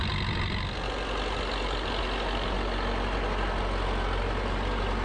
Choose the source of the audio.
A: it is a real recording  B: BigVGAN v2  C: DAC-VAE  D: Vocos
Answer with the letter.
A